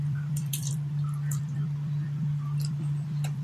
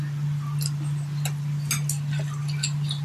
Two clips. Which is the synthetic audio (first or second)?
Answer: first